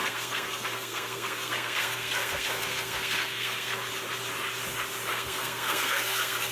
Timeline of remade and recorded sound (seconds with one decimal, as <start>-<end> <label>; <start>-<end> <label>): 0.0-3.9 remade; 3.9-5.1 recorded; 5.1-6.5 remade